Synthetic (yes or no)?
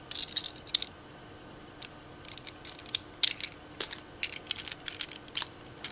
no